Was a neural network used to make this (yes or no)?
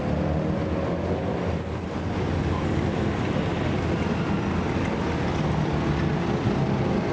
no